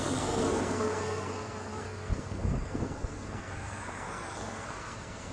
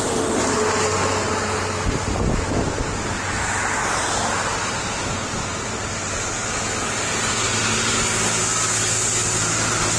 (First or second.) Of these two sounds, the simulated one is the first